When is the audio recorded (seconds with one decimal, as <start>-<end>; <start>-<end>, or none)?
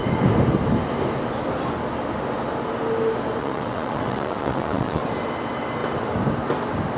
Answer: 0.0-3.4; 5.0-7.0